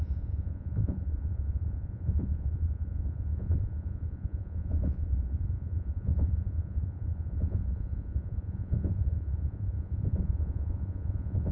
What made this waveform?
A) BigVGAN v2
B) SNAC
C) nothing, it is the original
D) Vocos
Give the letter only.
D